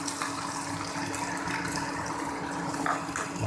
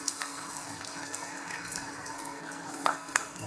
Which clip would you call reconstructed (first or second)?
second